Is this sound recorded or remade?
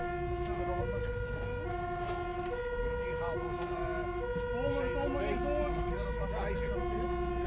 recorded